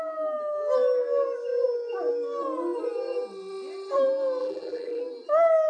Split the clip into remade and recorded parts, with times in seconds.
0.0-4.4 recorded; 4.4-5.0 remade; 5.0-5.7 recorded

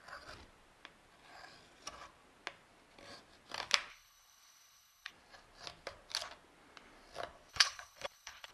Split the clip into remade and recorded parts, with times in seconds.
0.0-3.9 recorded; 3.9-5.1 remade; 5.1-7.5 recorded; 7.5-8.5 remade